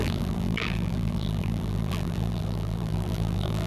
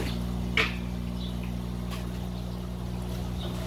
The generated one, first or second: first